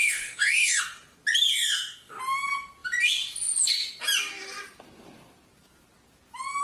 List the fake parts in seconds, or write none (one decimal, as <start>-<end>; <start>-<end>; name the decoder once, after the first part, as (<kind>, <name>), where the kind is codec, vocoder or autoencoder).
0.0-0.8 (codec, DAC); 1.5-2.2